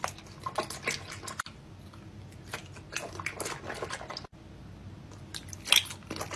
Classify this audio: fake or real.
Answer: real